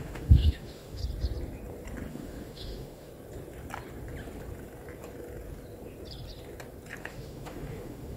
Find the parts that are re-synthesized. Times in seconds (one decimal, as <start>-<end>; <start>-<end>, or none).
0.0-1.0; 2.1-3.1; 7.0-8.2